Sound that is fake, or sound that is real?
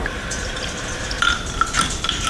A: real